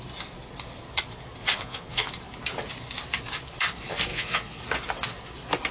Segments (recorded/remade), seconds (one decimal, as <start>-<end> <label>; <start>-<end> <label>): 0.0-1.4 recorded; 1.4-2.1 remade; 2.1-4.1 recorded; 4.1-4.6 remade; 4.6-5.7 recorded

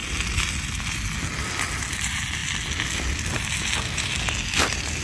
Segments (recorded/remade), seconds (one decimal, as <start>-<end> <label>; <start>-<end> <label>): 0.0-5.0 recorded

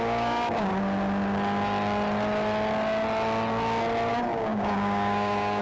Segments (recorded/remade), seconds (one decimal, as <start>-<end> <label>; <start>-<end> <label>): 0.0-0.7 remade; 0.7-4.1 recorded; 4.1-5.6 remade

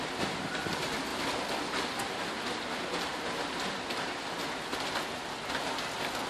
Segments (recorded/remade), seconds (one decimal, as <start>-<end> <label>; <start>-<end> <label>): 0.0-6.3 recorded

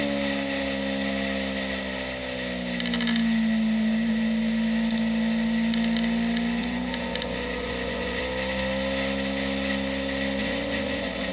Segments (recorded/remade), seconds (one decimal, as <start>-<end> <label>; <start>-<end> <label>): 0.0-6.6 recorded; 6.6-8.2 remade; 8.2-10.4 recorded; 10.4-11.3 remade

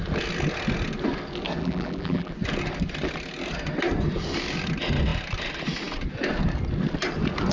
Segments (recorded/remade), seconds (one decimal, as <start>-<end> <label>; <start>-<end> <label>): 0.0-1.6 recorded; 1.6-2.3 remade; 2.3-7.5 recorded

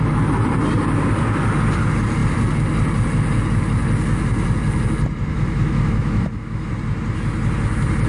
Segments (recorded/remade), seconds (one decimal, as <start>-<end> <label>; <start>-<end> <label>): 0.0-5.3 recorded; 5.3-6.7 remade; 6.7-8.1 recorded